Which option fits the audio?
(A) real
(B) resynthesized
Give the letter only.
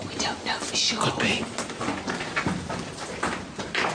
A